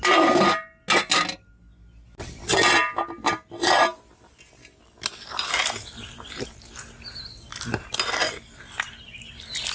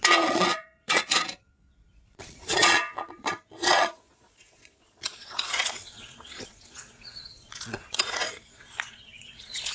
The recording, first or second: first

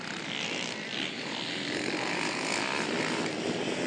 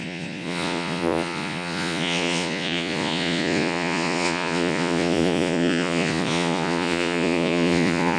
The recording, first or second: first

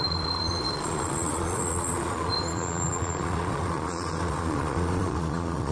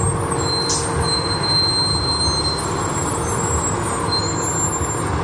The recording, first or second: second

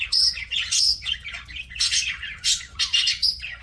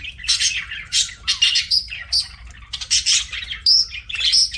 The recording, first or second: second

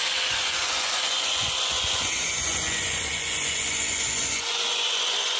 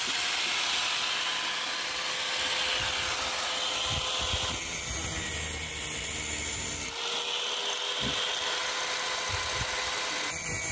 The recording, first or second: second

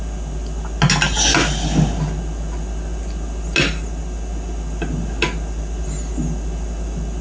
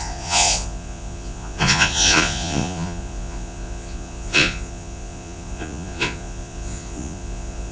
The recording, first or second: first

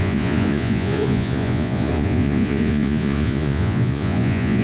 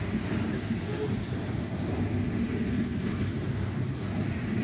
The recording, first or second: second